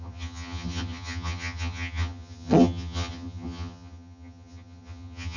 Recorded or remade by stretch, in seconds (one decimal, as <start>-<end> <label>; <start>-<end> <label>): 0.0-5.4 remade